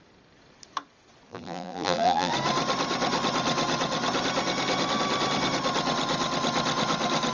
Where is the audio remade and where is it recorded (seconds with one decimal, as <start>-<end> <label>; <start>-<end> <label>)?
0.0-1.3 recorded; 1.3-2.3 remade; 2.3-7.3 recorded